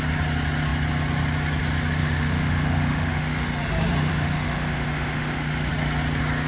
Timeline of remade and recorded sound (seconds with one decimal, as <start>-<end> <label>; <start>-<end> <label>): 0.0-2.0 recorded; 2.0-3.5 remade; 3.5-4.1 recorded; 4.1-5.7 remade; 5.7-6.5 recorded